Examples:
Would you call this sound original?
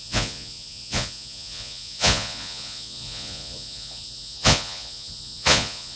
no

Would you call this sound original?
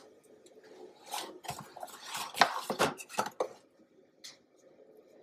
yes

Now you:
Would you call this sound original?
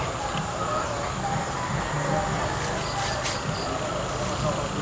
yes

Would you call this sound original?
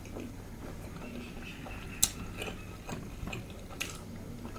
yes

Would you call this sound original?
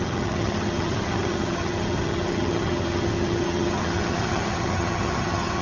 no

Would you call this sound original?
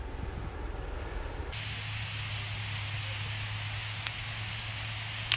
yes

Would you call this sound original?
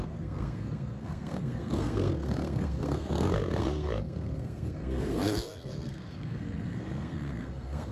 no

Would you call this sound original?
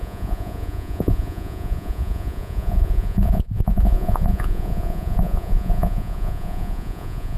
no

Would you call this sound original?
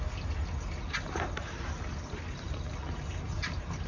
yes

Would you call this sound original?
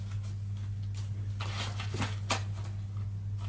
yes